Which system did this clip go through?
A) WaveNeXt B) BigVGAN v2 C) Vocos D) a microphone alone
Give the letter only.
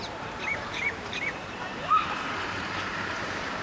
B